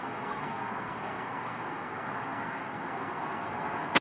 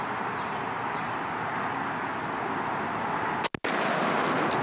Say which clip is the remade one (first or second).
first